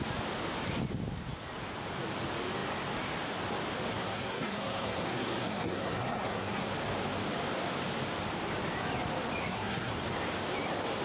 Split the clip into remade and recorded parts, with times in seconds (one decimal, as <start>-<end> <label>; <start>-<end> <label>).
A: 0.0-3.9 recorded; 3.9-6.7 remade; 6.7-9.4 recorded; 9.4-10.0 remade; 10.0-11.0 recorded